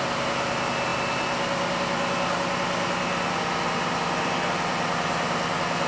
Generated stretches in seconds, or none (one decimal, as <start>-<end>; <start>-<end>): none